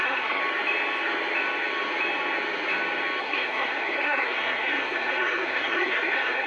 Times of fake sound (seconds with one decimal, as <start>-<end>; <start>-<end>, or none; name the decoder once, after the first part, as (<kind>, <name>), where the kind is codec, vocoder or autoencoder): 0.0-0.4 (codec, SNAC); 3.2-6.5